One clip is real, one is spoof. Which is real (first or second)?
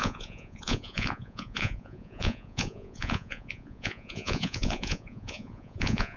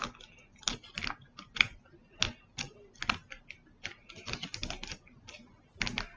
second